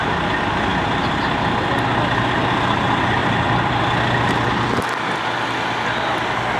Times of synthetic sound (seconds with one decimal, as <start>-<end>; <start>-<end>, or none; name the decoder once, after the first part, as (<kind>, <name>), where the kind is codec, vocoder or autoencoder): 3.2-3.8 (vocoder, BigVGAN v2)